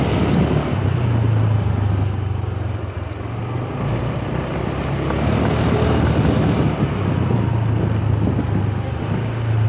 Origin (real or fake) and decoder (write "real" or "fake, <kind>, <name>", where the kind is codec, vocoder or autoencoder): real